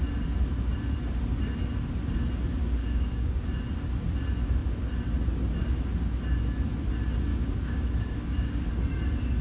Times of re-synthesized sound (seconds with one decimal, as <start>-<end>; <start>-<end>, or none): 2.8-3.4; 7.3-8.7